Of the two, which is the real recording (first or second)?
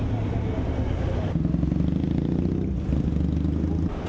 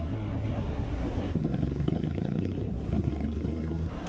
first